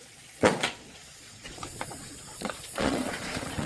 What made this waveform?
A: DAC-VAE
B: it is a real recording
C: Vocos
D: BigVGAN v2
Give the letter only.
C